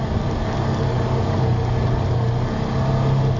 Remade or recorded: recorded